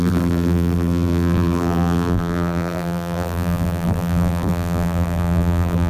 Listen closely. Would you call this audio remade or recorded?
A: remade